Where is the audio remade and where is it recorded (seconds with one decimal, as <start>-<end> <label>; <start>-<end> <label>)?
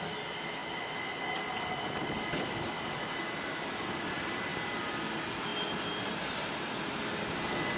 0.0-7.8 recorded